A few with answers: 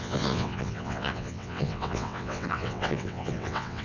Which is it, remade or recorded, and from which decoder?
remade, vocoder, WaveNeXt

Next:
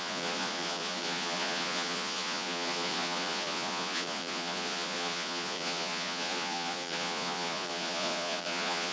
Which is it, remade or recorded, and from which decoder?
remade, vocoder, Vocos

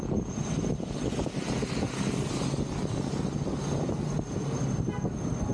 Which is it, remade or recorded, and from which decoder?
recorded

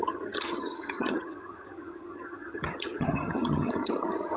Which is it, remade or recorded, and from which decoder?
remade, vocoder, HiFi-GAN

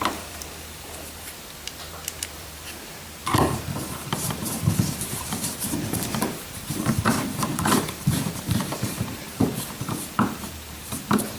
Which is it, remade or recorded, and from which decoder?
remade, vocoder, BigVGAN v2